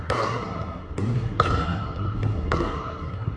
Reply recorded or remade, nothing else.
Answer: remade